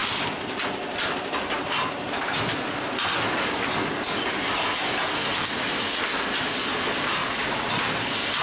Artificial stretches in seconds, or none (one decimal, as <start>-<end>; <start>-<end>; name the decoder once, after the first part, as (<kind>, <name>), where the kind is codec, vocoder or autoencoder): 7.2-7.7 (vocoder, Vocos)